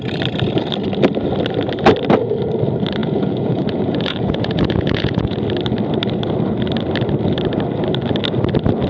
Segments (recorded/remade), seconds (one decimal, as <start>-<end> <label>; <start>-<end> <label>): 0.0-3.0 recorded; 3.0-5.4 remade; 5.4-8.9 recorded